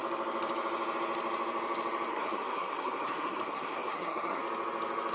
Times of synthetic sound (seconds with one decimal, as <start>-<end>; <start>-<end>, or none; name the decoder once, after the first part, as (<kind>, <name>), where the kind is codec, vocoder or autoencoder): 2.1-4.4 (codec, SNAC)